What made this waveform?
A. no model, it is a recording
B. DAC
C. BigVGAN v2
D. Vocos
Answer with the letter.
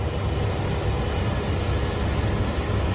A